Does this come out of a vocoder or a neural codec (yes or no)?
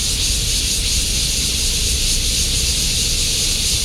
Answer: no